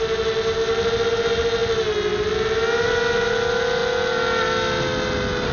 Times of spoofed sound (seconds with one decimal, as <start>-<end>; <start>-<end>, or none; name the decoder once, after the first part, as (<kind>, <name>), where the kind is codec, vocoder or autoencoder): none

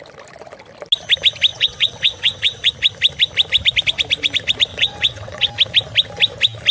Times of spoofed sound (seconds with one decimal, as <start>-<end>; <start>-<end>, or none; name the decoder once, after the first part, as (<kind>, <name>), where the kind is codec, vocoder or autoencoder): 1.5-2.7 (vocoder, WaveNeXt); 4.7-5.5

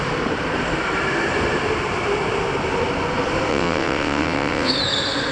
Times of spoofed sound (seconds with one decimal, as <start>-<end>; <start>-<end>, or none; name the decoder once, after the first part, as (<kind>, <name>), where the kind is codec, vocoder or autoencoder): 3.5-4.7 (vocoder, WaveNeXt)